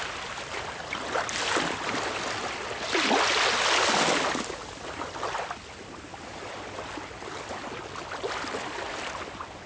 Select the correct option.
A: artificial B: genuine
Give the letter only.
B